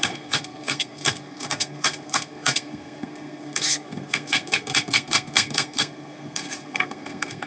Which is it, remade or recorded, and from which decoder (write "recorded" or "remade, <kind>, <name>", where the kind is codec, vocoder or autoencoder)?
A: remade, codec, SNAC